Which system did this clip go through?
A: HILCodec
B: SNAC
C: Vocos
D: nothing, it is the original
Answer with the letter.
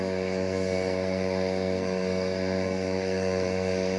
B